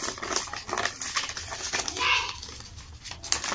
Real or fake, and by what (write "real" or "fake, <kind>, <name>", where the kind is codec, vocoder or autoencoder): real